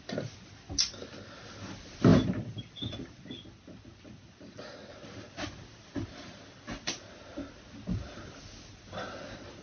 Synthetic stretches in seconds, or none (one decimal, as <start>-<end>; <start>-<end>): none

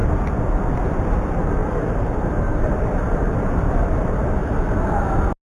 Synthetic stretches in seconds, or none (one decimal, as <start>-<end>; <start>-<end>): 1.6-4.6

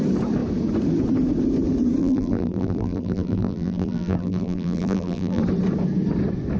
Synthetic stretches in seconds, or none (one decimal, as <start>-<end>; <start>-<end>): 2.0-5.4

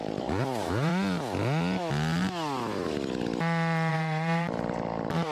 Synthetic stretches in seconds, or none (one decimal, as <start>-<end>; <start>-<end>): 0.0-0.9; 3.9-5.3